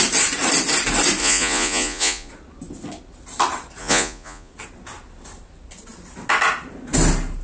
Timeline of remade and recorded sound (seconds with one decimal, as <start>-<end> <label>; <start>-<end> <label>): 0.0-1.2 recorded; 1.2-2.3 remade; 2.3-3.8 recorded; 3.8-4.5 remade; 4.5-7.4 recorded